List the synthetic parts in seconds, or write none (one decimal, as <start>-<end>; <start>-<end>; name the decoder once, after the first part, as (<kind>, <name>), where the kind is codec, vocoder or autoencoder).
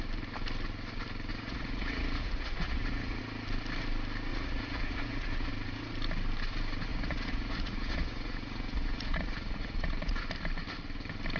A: 1.3-3.2 (vocoder, Vocos); 4.3-5.5; 6.9-10.2